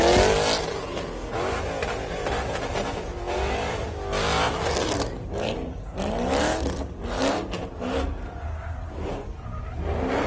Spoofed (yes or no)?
no